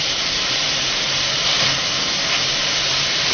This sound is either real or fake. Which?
fake